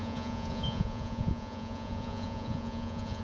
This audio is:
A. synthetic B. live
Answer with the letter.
A